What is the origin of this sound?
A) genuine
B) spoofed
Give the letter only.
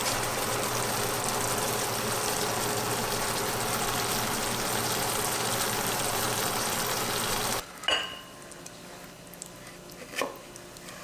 A